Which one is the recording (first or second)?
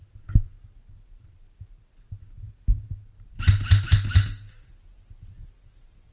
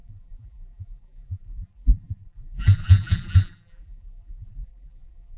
first